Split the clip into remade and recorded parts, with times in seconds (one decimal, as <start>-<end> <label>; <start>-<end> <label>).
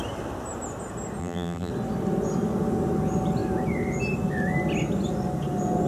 0.0-1.2 recorded; 1.2-1.7 remade; 1.7-5.9 recorded